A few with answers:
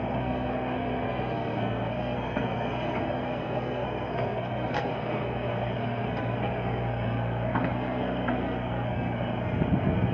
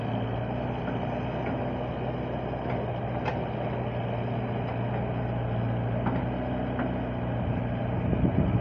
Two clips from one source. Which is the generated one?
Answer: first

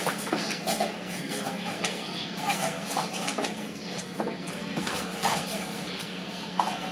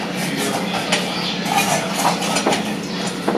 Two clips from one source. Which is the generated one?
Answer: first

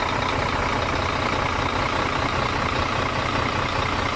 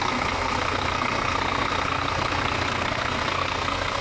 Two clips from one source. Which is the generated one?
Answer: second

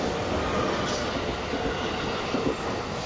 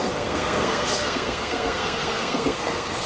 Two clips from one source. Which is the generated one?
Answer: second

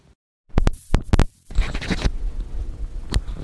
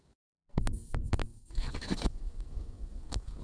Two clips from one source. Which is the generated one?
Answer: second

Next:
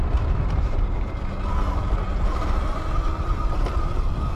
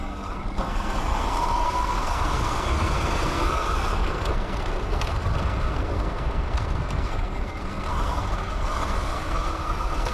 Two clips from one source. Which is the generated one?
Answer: second